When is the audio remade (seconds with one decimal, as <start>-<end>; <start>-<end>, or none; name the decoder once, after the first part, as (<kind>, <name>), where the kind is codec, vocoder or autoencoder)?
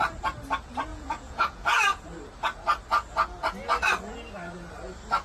0.9-2.0 (vocoder, Vocos)